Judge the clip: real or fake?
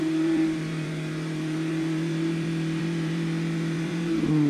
fake